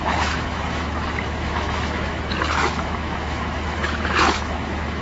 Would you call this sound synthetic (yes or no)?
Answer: yes